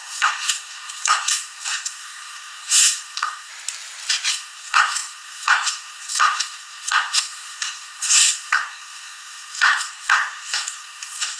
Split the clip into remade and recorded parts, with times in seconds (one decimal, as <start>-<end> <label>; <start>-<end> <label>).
0.0-3.5 remade; 3.5-4.3 recorded; 4.3-11.4 remade